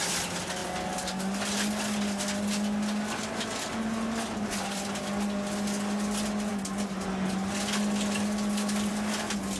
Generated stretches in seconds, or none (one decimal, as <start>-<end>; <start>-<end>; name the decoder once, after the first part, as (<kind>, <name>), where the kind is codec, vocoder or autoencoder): none